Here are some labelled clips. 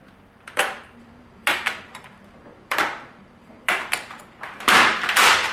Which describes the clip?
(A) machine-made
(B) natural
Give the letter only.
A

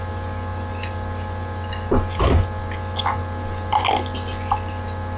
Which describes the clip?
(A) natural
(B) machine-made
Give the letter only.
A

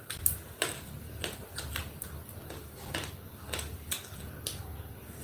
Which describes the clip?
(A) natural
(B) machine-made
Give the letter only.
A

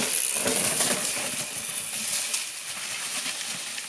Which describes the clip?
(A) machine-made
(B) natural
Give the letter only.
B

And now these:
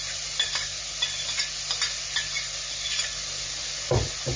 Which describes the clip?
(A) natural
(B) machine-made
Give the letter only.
A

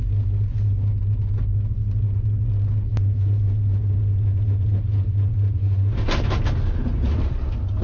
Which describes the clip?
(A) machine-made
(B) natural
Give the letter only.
B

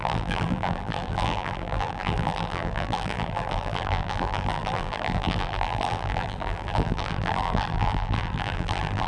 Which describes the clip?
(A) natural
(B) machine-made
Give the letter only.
B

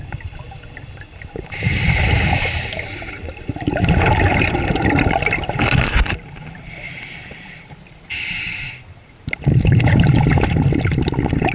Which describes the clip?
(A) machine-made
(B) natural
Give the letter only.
A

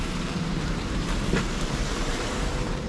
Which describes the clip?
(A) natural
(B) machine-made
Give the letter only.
B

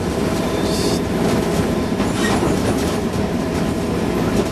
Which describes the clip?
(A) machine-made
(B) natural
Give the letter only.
A